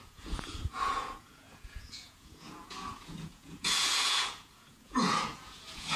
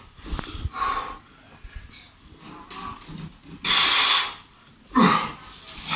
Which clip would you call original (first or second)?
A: second